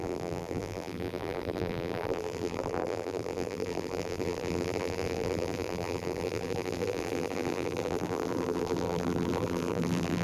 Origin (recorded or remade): remade